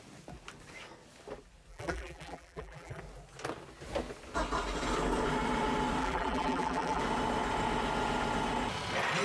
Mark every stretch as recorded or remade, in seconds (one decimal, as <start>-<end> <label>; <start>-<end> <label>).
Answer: 0.0-1.7 recorded; 1.7-3.0 remade; 3.0-6.0 recorded; 6.0-7.0 remade; 7.0-9.2 recorded